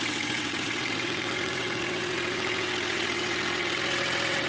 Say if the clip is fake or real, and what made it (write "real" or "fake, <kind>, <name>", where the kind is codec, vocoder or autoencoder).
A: fake, vocoder, WaveNeXt